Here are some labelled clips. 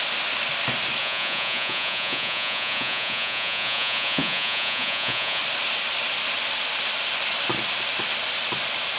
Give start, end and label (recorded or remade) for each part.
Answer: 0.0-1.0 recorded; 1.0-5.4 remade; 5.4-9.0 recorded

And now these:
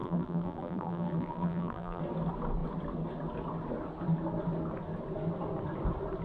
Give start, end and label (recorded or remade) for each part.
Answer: 0.0-2.0 remade; 2.0-6.2 recorded

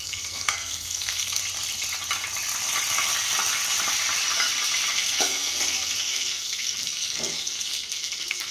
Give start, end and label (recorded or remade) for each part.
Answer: 0.0-1.4 remade; 1.4-4.9 recorded; 4.9-8.5 remade

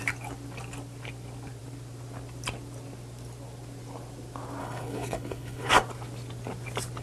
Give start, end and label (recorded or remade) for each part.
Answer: 0.0-4.6 recorded; 4.6-5.7 remade; 5.7-7.0 recorded